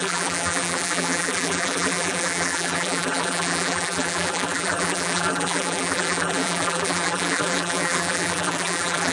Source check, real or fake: fake